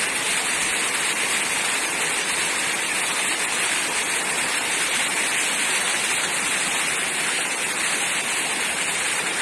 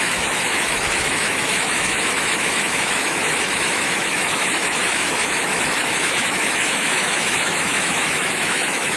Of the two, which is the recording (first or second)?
first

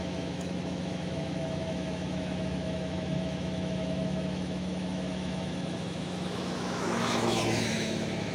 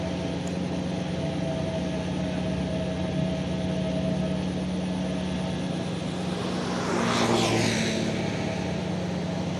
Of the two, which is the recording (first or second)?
second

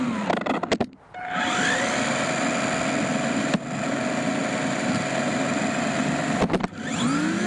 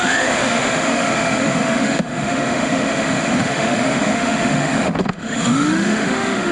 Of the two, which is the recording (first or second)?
first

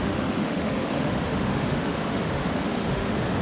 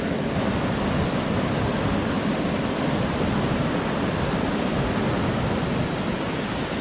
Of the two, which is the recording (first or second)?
second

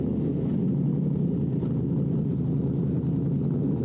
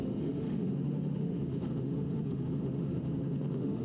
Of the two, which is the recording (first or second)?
first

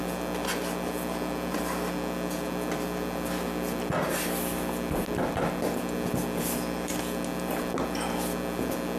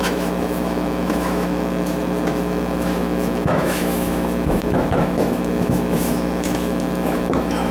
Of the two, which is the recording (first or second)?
first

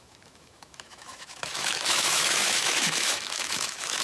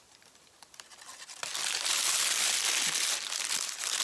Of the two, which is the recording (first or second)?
second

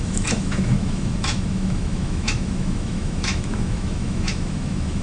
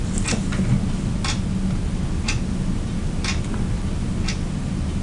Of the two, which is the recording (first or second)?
second